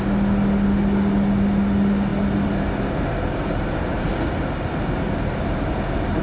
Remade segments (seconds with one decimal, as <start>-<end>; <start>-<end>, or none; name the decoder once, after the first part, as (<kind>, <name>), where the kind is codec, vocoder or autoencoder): none